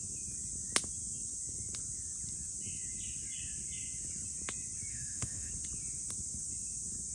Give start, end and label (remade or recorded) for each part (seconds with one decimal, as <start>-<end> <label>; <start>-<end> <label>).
0.0-4.9 recorded; 4.9-5.5 remade; 5.5-7.1 recorded